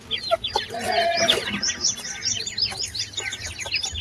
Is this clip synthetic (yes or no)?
no